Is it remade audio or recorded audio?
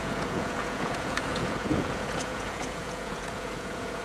remade